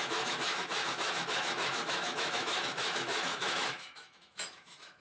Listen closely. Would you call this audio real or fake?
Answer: fake